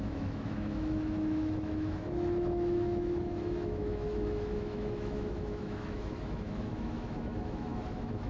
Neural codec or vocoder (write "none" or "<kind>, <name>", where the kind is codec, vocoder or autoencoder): autoencoder, DAC-VAE